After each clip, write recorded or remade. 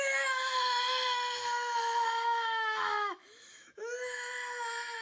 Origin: remade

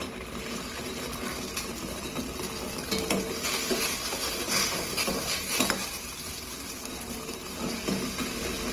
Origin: recorded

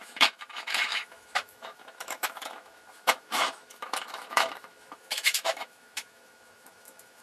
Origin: remade